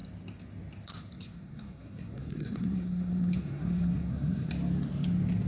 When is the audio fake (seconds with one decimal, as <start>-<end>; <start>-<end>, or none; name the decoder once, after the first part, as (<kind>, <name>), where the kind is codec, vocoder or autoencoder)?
1.2-4.5 (codec, SNAC)